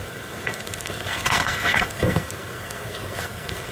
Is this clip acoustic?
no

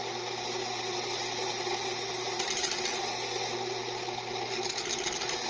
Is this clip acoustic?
yes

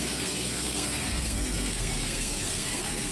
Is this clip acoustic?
no